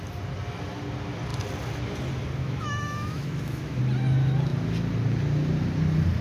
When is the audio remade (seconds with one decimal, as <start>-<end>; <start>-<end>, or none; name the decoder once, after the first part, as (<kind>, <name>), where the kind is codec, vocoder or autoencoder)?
2.4-3.8 (autoencoder, DAC-VAE)